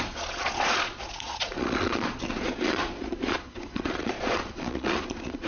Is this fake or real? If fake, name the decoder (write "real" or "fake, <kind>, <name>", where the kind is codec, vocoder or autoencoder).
fake, vocoder, Vocos